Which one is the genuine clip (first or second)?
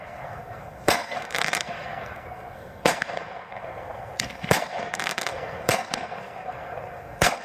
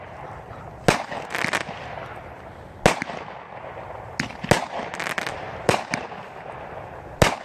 second